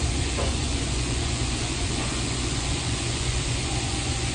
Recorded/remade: remade